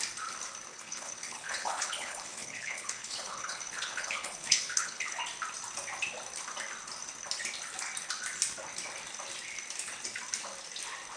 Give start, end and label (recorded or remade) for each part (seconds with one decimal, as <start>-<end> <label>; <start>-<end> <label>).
0.0-0.7 recorded; 0.7-5.2 remade; 5.2-11.2 recorded